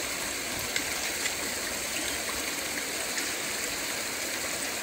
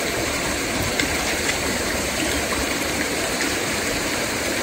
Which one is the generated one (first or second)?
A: second